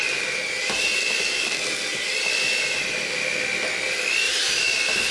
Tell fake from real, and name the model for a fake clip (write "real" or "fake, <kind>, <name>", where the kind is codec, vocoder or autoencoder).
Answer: real